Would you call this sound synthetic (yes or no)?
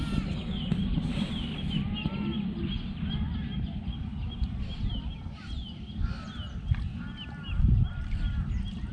no